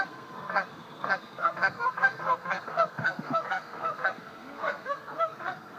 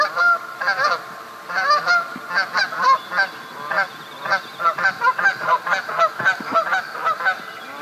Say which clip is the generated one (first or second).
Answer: first